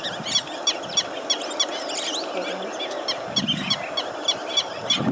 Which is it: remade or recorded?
recorded